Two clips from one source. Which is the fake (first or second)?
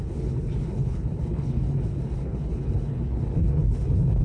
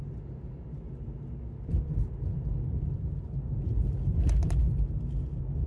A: first